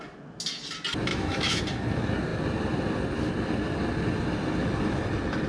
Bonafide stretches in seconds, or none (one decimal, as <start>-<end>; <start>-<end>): 0.0-1.1; 1.6-5.5